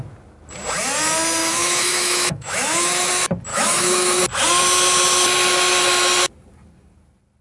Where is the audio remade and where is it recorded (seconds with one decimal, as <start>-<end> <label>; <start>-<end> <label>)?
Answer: 0.0-1.4 recorded; 1.4-3.1 remade; 3.1-3.5 recorded; 3.5-4.2 remade; 4.2-7.4 recorded